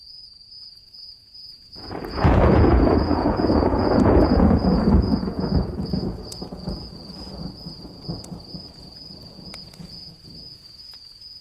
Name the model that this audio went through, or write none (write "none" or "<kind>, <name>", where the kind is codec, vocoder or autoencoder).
vocoder, Vocos